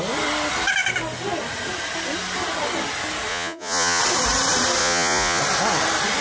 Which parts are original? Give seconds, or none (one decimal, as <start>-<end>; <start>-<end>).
0.0-3.3; 4.0-4.8; 5.4-6.2